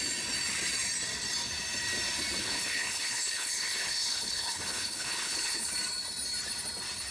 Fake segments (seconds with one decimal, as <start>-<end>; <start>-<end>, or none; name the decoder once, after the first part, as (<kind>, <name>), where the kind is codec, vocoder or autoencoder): 2.4-5.7 (codec, HILCodec)